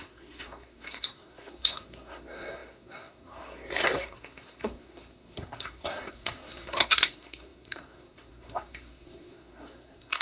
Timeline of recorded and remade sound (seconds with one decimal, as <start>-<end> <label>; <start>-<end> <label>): 0.0-10.2 remade